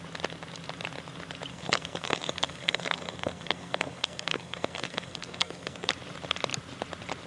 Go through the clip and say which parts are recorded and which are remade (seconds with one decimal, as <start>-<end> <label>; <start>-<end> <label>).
0.0-1.5 recorded; 1.5-5.9 remade; 5.9-7.3 recorded